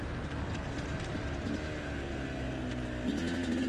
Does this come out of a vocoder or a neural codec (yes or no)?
no